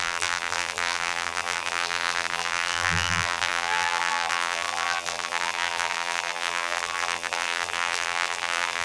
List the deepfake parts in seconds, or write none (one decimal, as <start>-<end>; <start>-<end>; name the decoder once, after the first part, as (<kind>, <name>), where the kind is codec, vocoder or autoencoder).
0.0-8.8 (vocoder, BigVGAN v2)